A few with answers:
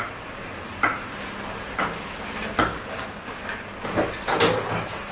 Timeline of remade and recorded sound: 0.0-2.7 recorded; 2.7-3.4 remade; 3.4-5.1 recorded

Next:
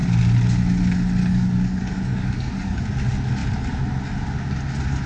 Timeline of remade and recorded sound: 0.0-1.2 recorded; 1.2-2.8 remade; 2.8-5.1 recorded